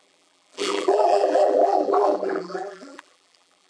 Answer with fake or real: fake